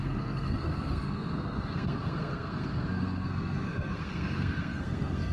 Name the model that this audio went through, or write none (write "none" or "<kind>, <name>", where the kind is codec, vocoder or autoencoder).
codec, SNAC